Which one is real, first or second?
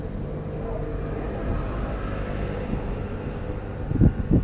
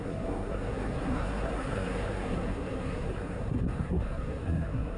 first